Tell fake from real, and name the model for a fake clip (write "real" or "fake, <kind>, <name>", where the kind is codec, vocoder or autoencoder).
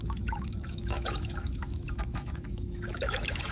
fake, autoencoder, DAC-VAE